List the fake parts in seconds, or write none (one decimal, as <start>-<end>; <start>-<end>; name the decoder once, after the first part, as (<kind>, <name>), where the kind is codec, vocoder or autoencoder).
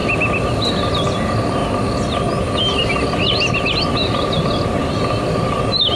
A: none